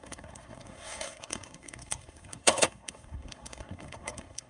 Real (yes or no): no